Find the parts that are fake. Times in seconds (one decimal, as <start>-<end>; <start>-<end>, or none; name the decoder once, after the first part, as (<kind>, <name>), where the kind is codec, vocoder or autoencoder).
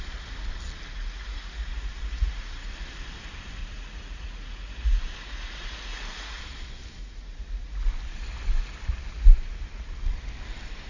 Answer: 0.9-2.7 (vocoder, Vocos); 3.6-6.4; 7.0-7.8